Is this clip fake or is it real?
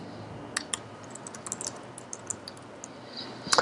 real